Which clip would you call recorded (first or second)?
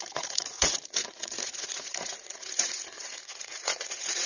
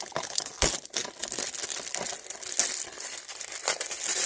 second